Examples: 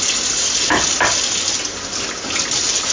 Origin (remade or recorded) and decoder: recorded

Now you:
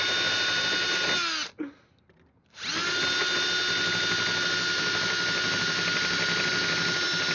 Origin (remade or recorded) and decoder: recorded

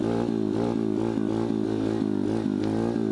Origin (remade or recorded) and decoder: recorded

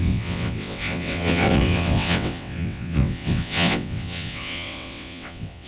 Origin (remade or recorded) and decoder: remade, vocoder, WaveNeXt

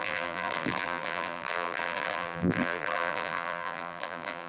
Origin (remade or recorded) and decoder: remade, vocoder, BigVGAN v2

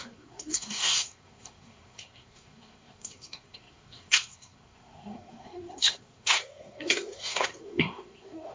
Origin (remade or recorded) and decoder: remade, codec, SNAC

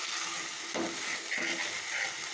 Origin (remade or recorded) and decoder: recorded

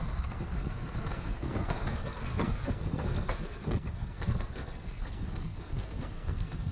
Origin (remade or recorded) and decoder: remade, codec, SNAC